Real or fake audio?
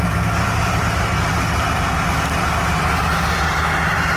real